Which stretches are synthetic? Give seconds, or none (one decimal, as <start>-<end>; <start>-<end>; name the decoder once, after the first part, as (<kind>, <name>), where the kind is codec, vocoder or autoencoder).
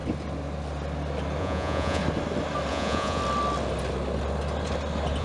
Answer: 1.4-2.0 (vocoder, Vocos); 2.7-3.2